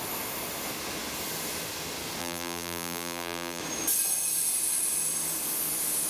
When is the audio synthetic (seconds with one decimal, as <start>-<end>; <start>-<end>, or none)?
2.2-3.6